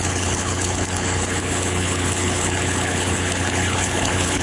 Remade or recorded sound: remade